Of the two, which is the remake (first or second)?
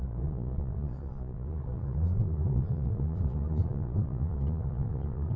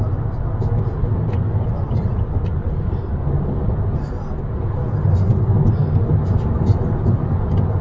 first